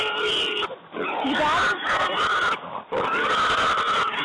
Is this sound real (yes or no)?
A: yes